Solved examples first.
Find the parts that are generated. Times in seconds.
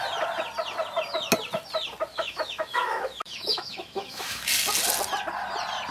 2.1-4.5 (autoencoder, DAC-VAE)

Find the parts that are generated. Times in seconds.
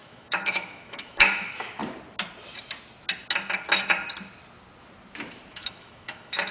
0.0-1.8 (autoencoder, DAC-VAE); 5.5-6.5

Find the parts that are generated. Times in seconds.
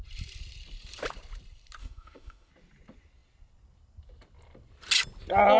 1.8-2.5 (autoencoder, DAC-VAE)